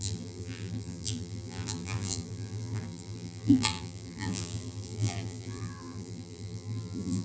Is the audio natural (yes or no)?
no